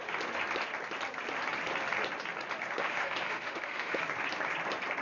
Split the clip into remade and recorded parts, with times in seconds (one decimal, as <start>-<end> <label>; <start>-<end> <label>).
0.0-2.8 recorded; 2.8-4.0 remade; 4.0-5.0 recorded